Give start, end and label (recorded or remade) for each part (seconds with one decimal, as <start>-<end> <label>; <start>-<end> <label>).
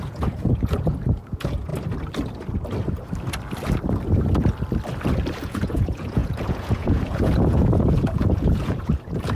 0.0-1.7 remade; 1.7-5.4 recorded; 5.4-9.3 remade